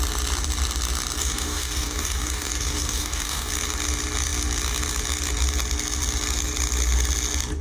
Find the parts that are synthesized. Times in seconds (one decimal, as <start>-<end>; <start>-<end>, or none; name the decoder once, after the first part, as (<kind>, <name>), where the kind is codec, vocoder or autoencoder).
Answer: 1.2-3.5 (codec, DAC)

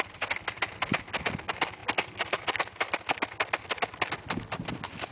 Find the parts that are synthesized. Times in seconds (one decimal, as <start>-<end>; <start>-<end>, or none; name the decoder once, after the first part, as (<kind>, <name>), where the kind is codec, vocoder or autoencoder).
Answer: none

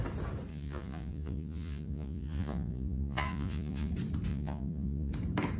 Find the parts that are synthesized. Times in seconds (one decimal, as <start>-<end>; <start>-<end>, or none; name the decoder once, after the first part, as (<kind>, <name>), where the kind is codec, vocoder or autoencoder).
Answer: 0.5-3.9 (vocoder, Vocos); 4.3-5.1

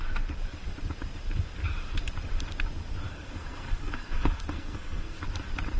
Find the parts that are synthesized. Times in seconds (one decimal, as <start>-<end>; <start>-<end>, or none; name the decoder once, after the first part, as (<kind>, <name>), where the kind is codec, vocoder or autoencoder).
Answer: 3.1-5.2 (codec, SNAC)